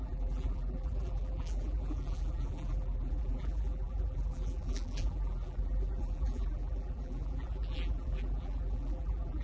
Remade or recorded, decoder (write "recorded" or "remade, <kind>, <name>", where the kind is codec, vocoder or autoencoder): remade, vocoder, BigVGAN v2